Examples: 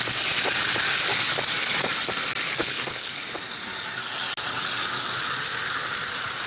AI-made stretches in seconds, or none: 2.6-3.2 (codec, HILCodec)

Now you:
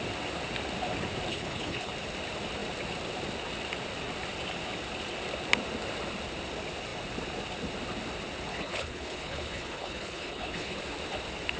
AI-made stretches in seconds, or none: 1.3-1.9 (codec, HILCodec); 8.5-10.8

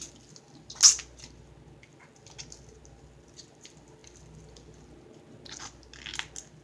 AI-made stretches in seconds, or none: none

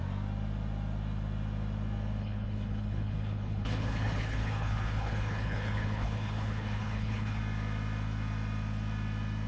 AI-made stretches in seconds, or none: 2.2-7.4 (codec, HILCodec)